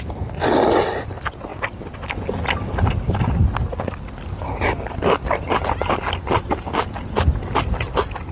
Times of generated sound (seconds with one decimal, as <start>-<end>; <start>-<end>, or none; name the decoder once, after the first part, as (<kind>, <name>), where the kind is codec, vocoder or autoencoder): none